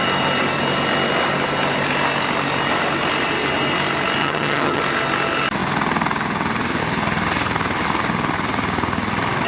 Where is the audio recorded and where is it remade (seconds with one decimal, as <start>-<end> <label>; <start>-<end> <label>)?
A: 0.0-4.2 recorded; 4.2-4.8 remade; 4.8-9.5 recorded